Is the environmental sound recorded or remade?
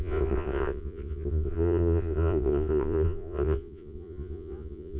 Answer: remade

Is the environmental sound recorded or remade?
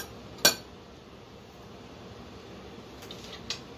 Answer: recorded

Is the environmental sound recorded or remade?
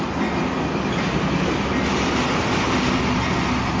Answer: recorded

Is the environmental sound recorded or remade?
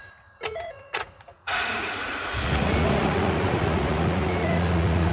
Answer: remade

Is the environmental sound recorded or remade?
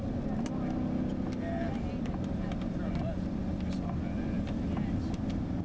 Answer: recorded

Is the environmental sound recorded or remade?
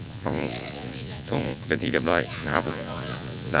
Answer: remade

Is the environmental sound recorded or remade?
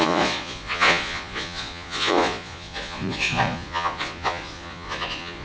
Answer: remade